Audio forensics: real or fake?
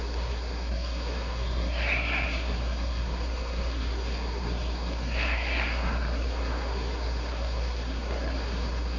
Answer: fake